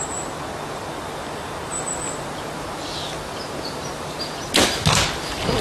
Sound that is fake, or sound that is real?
real